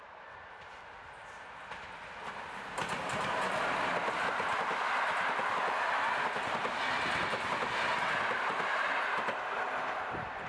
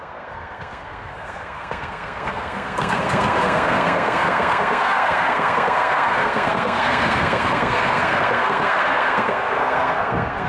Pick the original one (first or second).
first